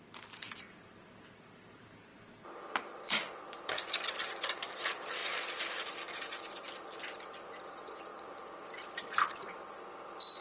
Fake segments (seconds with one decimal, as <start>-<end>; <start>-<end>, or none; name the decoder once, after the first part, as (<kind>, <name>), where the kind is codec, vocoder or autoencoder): 0.0-2.1 (vocoder, BigVGAN v2); 2.9-10.4

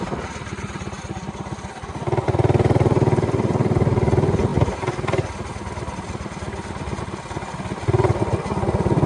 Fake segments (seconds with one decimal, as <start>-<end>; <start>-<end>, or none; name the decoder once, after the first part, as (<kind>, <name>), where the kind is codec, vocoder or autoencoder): none

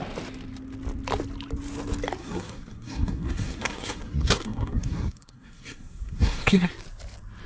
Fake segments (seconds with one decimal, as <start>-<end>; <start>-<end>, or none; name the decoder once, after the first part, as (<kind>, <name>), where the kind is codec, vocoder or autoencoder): 2.2-6.7 (codec, SNAC)

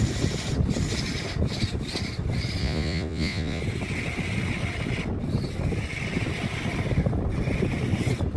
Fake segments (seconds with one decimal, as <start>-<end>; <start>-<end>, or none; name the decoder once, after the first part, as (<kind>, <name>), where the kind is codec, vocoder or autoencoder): 2.6-3.6 (vocoder, Vocos)

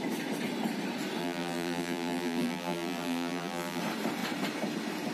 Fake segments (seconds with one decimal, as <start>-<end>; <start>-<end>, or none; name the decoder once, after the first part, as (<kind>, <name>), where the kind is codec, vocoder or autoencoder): 1.2-3.8 (vocoder, BigVGAN v2)

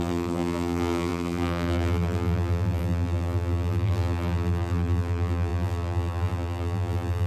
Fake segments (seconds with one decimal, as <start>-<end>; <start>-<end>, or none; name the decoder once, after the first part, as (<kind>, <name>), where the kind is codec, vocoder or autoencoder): 0.0-7.3 (vocoder, BigVGAN v2)